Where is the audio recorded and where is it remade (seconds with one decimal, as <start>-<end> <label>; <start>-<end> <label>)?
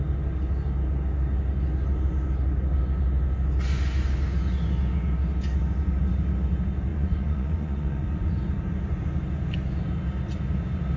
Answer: 0.0-6.9 recorded; 6.9-8.3 remade; 8.3-11.0 recorded